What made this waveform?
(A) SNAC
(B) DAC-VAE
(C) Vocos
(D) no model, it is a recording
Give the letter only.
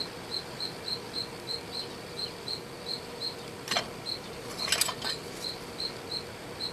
D